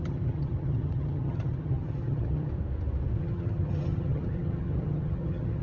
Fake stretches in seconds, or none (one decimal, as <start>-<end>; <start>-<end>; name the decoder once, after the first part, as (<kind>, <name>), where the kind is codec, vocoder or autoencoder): 0.0-2.5 (vocoder, HiFi-GAN); 3.2-5.6